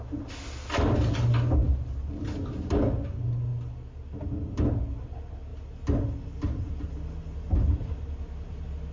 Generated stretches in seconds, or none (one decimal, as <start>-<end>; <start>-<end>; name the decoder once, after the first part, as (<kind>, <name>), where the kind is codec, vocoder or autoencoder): none